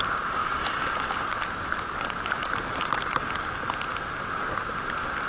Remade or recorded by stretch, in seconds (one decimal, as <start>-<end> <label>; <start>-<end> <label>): 0.0-5.3 recorded

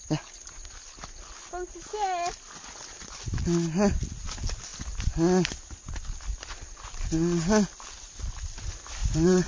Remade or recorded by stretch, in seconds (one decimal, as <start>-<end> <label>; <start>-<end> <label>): 0.0-9.0 recorded; 9.0-9.5 remade

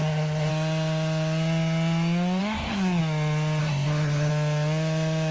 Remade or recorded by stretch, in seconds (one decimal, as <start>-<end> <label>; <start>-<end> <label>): 0.0-0.5 remade; 0.5-2.4 recorded; 2.4-3.0 remade; 3.0-3.6 recorded; 3.6-4.3 remade; 4.3-5.3 recorded